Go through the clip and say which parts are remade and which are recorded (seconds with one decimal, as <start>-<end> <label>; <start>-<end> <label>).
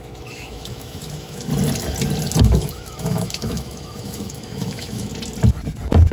0.0-1.5 remade; 1.5-2.4 recorded; 2.4-5.1 remade; 5.1-6.1 recorded